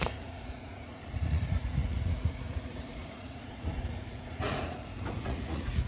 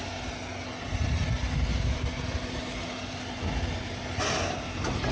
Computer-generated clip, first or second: first